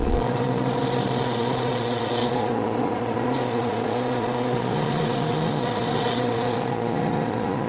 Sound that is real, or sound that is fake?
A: fake